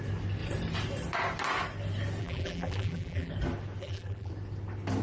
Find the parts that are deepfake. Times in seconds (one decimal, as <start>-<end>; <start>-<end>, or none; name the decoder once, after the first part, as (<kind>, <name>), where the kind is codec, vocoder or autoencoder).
2.2-3.3 (vocoder, BigVGAN v2); 3.8-4.3